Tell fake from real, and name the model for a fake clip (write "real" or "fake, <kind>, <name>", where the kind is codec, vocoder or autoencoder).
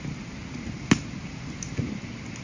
real